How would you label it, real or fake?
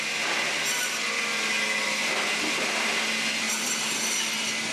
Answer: real